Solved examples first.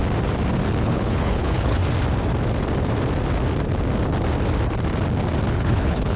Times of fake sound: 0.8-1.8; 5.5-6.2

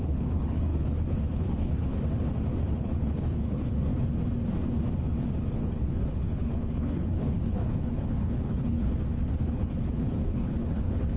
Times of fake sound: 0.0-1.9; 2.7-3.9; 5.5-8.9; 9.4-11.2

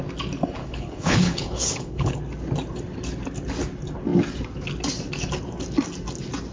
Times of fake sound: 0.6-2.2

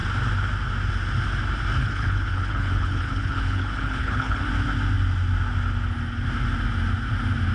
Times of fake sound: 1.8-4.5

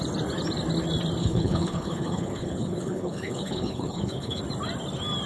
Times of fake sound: 1.2-4.4

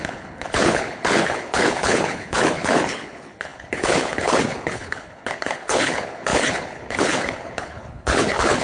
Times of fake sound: 0.0-8.6